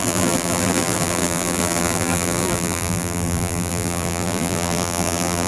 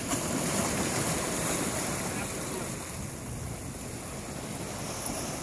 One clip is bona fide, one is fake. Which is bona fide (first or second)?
second